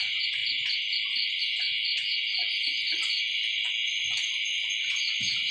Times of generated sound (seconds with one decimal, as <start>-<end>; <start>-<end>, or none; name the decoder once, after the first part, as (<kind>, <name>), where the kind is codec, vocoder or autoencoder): none